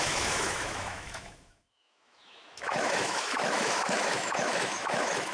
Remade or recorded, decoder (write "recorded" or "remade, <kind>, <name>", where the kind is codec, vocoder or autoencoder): remade, autoencoder, DAC-VAE